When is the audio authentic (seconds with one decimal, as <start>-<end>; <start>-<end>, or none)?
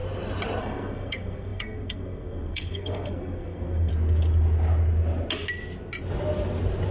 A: 0.0-0.6; 3.9-6.9